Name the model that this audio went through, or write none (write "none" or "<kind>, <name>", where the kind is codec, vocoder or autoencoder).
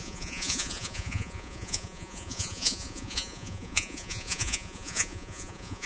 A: vocoder, Vocos